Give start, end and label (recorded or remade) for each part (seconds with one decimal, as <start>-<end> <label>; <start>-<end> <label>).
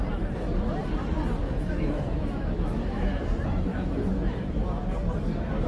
0.0-1.4 recorded; 1.4-3.2 remade; 3.2-3.7 recorded; 3.7-4.3 remade; 4.3-5.7 recorded